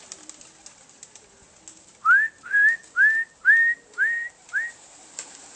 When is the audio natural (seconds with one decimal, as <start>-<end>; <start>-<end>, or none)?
0.0-5.6